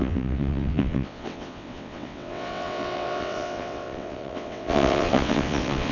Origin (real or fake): fake